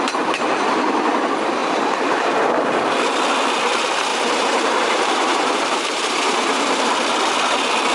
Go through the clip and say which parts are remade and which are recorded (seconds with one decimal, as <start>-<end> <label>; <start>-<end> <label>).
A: 0.0-1.6 recorded; 1.6-2.5 remade; 2.5-4.1 recorded; 4.1-6.9 remade; 6.9-7.9 recorded